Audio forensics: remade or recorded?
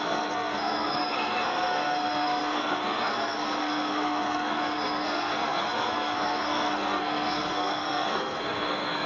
remade